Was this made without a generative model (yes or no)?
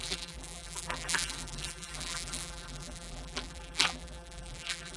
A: no